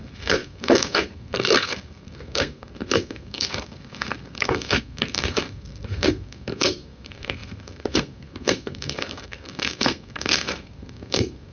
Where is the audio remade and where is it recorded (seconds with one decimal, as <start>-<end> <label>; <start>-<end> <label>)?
0.0-11.5 remade